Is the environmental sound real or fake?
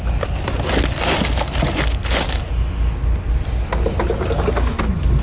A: real